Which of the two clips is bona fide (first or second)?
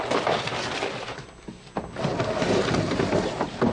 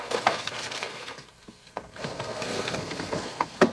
first